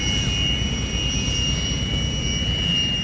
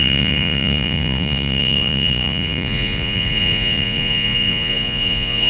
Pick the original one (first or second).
first